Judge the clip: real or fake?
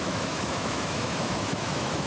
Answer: fake